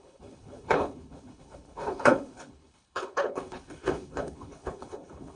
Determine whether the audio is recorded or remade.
remade